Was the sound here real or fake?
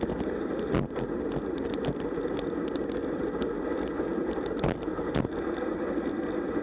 real